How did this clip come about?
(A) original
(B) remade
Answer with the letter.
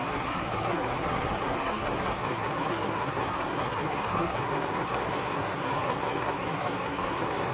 B